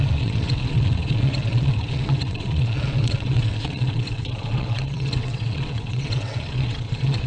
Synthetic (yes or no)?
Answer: yes